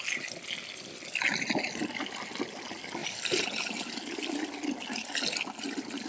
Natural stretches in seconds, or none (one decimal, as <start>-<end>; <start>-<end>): 0.0-3.0; 3.6-6.1